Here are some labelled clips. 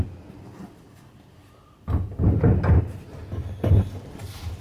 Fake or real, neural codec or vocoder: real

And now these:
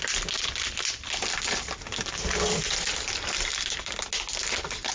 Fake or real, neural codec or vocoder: real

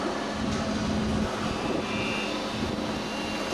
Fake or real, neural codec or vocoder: real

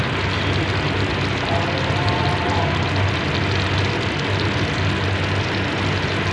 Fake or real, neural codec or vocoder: real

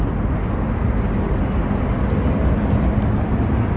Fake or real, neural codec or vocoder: real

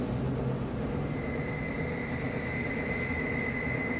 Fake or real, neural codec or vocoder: real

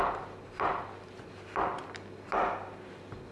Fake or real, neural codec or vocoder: real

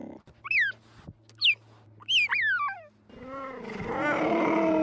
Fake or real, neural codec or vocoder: real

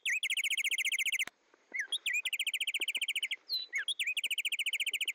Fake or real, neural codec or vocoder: real